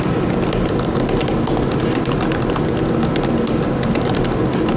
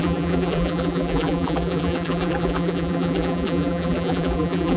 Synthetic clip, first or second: second